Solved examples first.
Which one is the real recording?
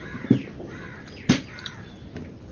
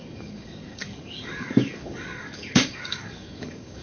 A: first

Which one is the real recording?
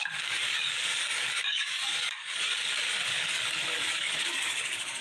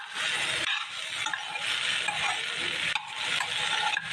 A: second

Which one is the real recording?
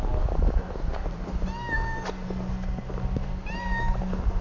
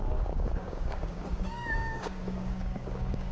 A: first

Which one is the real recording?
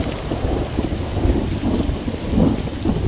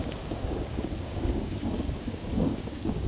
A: first